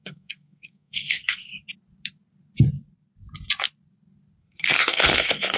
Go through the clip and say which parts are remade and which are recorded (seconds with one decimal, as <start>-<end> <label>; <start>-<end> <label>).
0.0-1.5 remade; 1.5-4.4 recorded; 4.4-5.6 remade